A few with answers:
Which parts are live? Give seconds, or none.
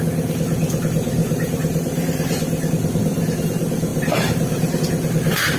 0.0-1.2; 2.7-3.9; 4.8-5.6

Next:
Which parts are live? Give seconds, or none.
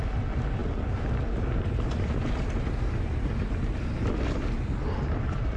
0.0-5.6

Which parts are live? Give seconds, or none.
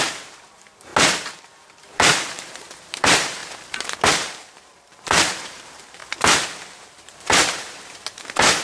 0.9-1.4; 3.4-4.1; 6.0-6.8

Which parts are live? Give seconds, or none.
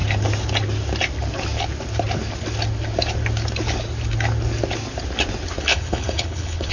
0.0-5.7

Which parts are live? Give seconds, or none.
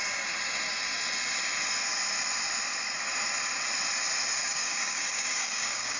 0.0-4.4